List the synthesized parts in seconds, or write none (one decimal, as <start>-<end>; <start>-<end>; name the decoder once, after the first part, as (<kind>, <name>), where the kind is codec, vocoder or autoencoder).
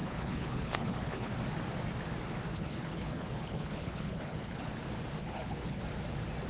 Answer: 0.0-1.3 (codec, HILCodec); 2.5-4.7; 5.2-5.8